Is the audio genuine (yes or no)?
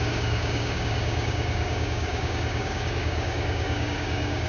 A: no